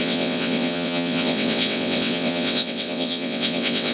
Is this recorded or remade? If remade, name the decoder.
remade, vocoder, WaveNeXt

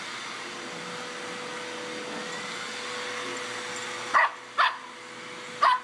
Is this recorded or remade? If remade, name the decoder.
recorded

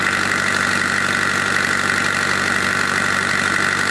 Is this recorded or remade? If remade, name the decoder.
recorded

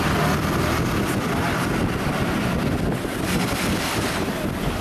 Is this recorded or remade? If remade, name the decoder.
recorded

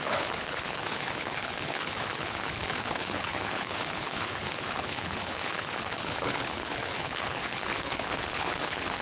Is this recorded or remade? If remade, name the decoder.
remade, codec, HILCodec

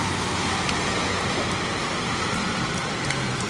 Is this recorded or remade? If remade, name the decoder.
recorded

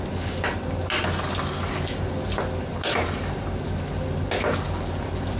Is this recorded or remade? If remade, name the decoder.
recorded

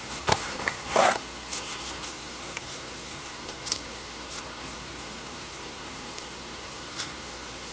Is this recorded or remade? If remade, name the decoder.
remade, codec, SNAC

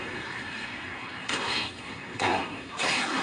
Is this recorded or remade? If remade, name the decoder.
remade, codec, SNAC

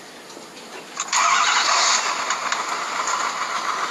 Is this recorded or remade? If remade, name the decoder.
recorded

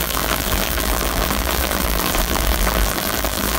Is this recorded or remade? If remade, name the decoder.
remade, vocoder, BigVGAN v2